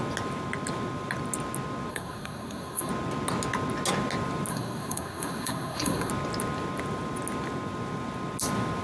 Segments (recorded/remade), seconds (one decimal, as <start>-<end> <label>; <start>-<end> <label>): 0.0-1.9 recorded; 1.9-2.9 remade; 2.9-4.5 recorded; 4.5-6.1 remade; 6.1-8.8 recorded